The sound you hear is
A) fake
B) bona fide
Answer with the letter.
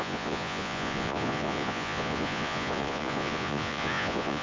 A